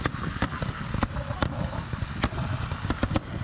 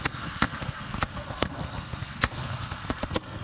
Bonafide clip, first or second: first